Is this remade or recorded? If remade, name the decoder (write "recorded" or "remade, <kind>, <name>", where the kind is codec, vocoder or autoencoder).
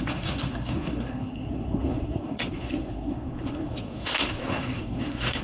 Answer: remade, codec, SNAC